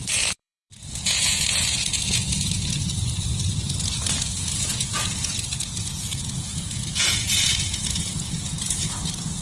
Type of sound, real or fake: fake